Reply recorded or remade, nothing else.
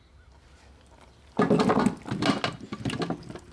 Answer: recorded